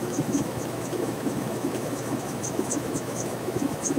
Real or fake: fake